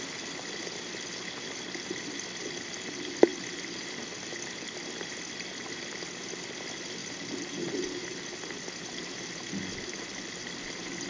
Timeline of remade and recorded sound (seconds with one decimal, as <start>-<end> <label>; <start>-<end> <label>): 0.0-11.1 recorded